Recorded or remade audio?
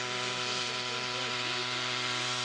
remade